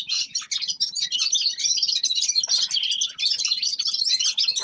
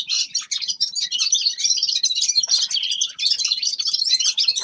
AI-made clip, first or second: second